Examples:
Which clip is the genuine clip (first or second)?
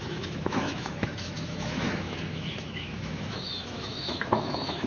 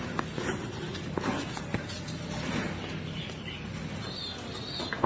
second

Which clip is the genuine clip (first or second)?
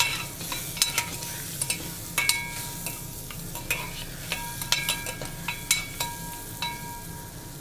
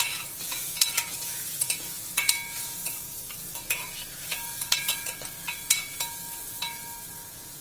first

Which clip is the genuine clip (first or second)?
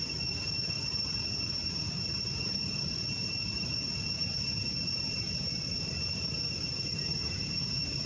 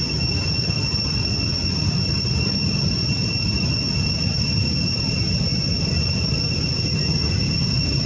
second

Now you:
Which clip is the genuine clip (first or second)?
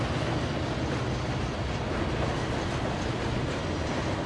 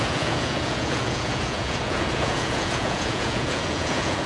first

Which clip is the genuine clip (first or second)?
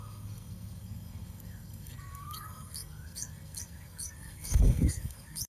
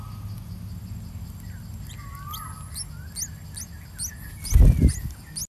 second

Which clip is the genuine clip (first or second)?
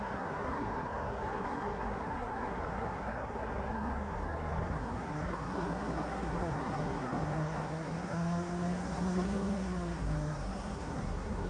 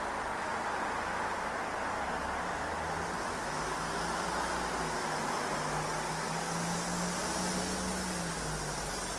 second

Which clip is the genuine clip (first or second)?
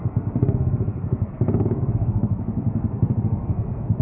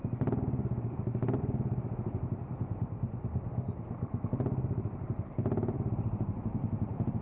second